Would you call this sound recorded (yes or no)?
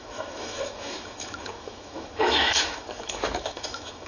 no